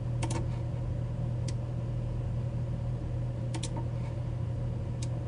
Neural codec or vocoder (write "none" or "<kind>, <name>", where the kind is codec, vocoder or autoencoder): none